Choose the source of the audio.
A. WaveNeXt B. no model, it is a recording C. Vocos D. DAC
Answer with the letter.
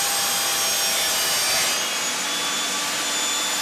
B